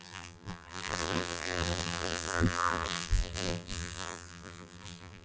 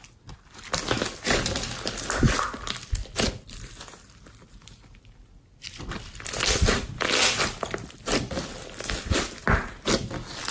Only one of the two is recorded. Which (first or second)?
second